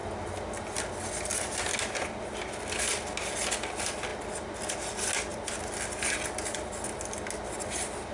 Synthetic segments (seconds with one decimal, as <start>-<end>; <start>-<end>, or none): none